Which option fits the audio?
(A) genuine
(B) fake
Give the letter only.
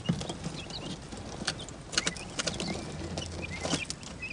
A